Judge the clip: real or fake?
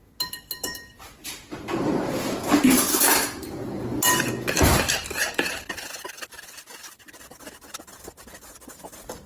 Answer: real